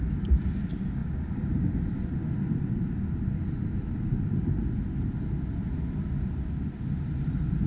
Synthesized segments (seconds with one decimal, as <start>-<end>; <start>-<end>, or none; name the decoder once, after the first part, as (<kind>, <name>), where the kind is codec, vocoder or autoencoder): none